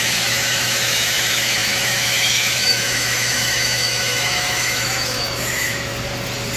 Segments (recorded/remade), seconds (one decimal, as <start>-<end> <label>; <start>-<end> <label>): 0.0-5.9 remade; 5.9-6.6 recorded